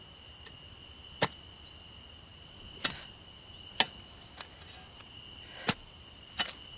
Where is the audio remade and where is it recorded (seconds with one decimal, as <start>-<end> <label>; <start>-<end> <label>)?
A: 0.0-6.8 recorded